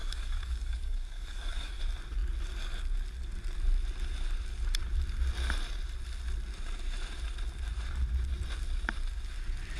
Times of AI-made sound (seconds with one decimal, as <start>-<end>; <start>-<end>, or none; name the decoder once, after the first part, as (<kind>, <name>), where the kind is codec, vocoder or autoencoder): 0.0-1.8 (codec, DAC)